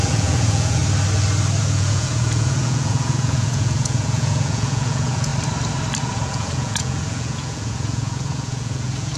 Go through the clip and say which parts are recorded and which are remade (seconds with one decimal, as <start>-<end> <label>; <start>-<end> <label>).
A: 0.0-0.8 remade; 0.8-1.6 recorded; 1.6-5.3 remade; 5.3-6.0 recorded; 6.0-9.2 remade